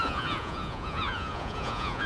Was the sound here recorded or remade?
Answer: remade